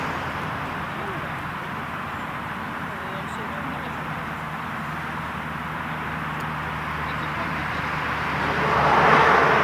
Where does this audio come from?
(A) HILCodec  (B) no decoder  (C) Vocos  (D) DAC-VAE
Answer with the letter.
B